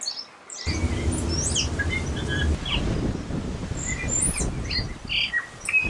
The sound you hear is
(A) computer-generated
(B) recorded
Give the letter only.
B